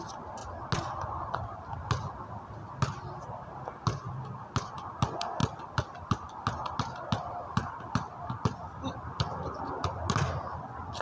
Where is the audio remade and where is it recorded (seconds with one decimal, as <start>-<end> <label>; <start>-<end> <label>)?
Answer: 0.0-11.0 recorded